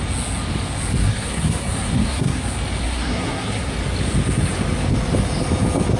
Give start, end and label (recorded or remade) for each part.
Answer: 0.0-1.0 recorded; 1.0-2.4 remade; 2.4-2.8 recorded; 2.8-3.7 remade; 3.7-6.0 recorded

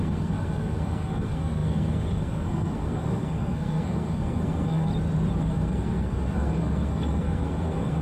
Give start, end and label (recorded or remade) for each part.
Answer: 0.0-4.9 remade; 4.9-5.4 recorded; 5.4-8.0 remade

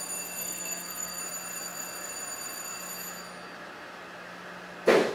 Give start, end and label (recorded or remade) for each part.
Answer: 0.0-0.4 recorded; 0.4-1.2 remade; 1.2-5.1 recorded

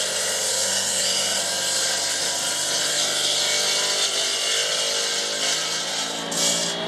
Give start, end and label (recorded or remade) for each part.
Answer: 0.0-0.5 recorded; 0.5-1.4 remade; 1.4-2.9 recorded; 2.9-3.4 remade; 3.4-6.9 recorded

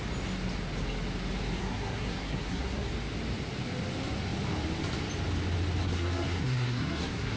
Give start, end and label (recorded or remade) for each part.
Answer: 0.0-1.6 recorded; 1.6-2.9 remade; 2.9-5.8 recorded; 5.8-7.4 remade